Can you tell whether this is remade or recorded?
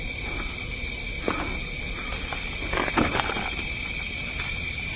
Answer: recorded